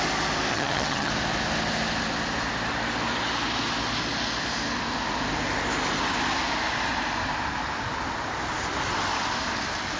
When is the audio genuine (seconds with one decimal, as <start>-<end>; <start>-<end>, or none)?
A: 0.0-0.5; 1.1-10.0